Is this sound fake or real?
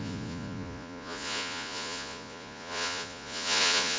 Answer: fake